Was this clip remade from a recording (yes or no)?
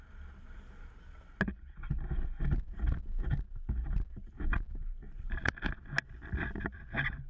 no